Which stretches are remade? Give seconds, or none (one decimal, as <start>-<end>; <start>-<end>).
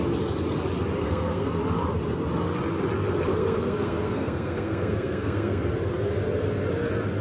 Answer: 1.0-1.6; 3.3-5.7